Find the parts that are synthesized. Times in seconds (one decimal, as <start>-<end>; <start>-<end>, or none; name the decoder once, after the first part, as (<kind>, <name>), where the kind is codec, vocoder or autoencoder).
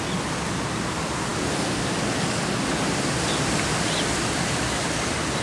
none